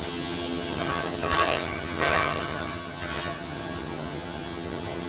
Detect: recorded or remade remade